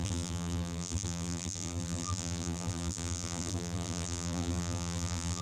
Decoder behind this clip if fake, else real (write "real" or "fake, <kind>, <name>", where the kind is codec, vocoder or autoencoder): fake, vocoder, BigVGAN v2